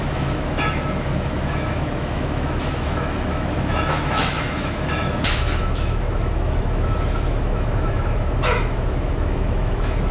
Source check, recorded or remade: remade